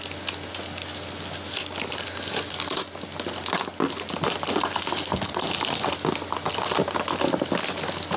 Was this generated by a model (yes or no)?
no